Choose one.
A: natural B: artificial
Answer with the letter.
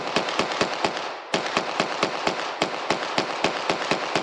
A